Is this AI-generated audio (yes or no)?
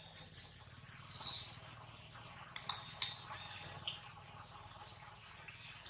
no